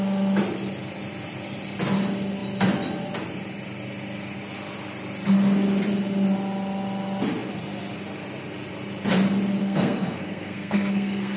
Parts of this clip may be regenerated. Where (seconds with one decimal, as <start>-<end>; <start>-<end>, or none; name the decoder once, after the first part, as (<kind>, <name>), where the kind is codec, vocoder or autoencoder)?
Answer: 9.6-11.4 (codec, SNAC)